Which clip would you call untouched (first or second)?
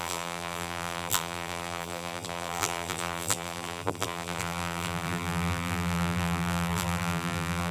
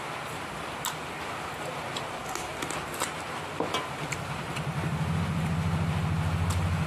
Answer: second